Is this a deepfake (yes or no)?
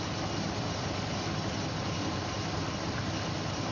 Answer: no